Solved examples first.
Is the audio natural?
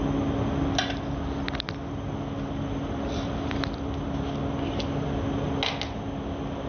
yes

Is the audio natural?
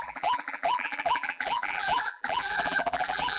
no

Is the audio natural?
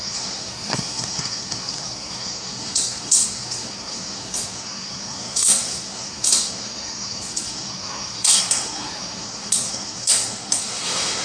no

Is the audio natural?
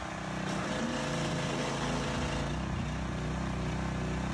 yes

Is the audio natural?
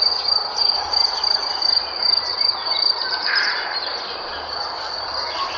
no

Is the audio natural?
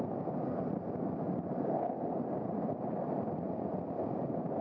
yes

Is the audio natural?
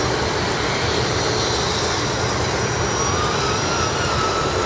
yes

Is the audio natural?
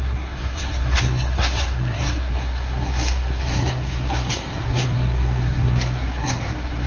no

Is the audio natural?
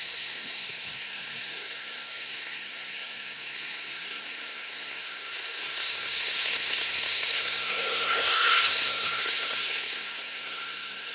no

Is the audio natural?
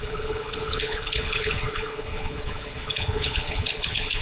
no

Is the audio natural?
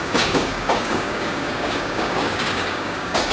no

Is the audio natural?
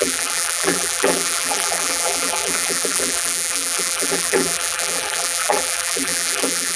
no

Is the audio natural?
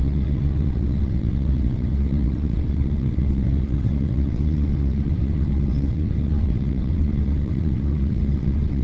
no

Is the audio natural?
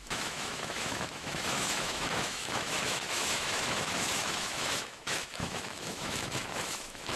no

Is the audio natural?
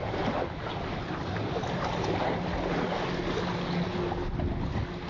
yes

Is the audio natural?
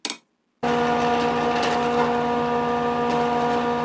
yes